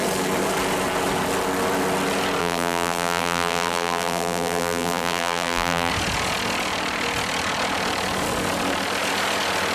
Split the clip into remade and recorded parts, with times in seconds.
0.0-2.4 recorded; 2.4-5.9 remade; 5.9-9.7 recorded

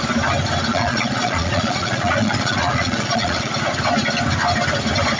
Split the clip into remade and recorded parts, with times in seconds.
0.0-0.7 recorded; 0.7-3.5 remade; 3.5-5.2 recorded

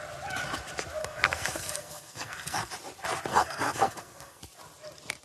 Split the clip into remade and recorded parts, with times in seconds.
0.0-1.0 recorded; 1.0-2.7 remade; 2.7-3.3 recorded; 3.3-4.4 remade; 4.4-5.2 recorded

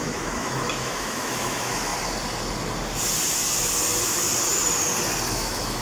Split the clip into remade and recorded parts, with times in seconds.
0.0-1.9 remade; 1.9-5.3 recorded; 5.3-5.8 remade

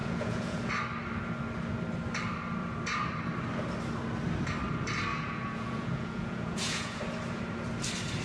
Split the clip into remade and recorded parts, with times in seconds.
0.0-0.7 remade; 0.7-5.1 recorded; 5.1-7.0 remade; 7.0-8.2 recorded